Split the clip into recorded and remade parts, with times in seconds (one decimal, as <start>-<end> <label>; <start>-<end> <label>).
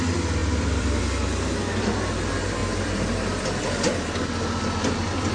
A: 0.0-0.4 recorded; 0.4-1.0 remade; 1.0-2.6 recorded; 2.6-3.6 remade; 3.6-5.3 recorded